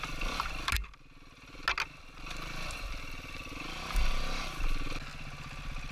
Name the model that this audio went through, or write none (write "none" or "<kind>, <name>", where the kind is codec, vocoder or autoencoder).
none